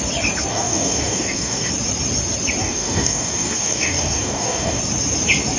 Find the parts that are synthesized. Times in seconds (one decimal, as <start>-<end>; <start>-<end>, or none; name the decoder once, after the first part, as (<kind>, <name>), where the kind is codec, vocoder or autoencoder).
0.5-1.7 (codec, DAC); 2.6-4.8